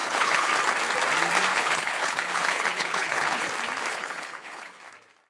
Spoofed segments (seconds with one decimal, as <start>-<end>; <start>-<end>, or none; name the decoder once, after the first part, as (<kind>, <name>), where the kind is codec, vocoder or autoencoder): 0.0-0.5 (codec, HILCodec); 1.5-3.5; 3.9-4.8

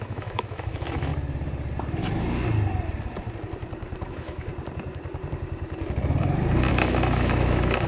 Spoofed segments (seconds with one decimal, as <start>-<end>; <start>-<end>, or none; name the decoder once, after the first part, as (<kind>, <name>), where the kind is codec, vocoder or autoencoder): 0.0-1.1 (autoencoder, DAC-VAE); 4.1-4.5; 6.7-7.9

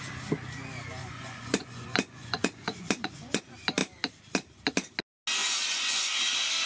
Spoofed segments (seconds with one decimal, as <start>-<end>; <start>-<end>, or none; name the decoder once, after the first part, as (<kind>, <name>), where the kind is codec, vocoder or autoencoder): 1.0-3.4 (vocoder, Vocos); 5.4-6.1

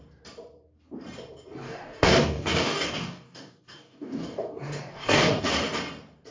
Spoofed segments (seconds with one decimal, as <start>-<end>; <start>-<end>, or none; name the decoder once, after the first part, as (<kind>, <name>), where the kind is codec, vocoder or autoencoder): 1.6-5.4 (codec, DAC)

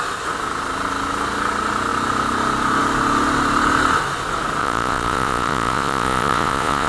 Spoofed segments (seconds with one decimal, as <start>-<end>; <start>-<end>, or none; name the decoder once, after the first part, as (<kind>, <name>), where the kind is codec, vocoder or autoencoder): 4.6-6.9 (vocoder, Vocos)

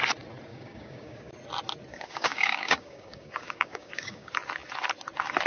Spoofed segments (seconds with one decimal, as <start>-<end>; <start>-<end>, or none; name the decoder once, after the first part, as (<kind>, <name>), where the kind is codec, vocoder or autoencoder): 0.5-1.3 (codec, DAC); 1.9-4.3